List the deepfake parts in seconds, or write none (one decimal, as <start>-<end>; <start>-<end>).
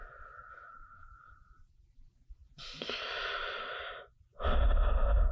none